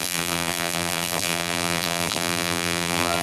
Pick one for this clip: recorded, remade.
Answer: remade